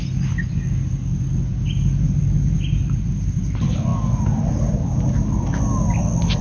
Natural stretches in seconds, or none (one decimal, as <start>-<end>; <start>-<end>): 0.0-6.4